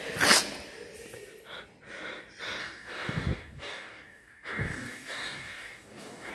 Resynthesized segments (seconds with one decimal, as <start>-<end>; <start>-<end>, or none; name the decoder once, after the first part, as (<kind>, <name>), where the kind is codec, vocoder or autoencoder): 2.6-6.3 (codec, DAC)